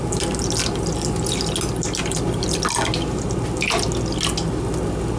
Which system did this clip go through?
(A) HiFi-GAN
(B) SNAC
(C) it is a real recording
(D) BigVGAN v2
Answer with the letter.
C